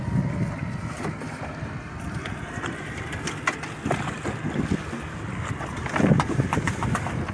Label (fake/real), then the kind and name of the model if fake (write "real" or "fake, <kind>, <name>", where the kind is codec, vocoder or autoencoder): real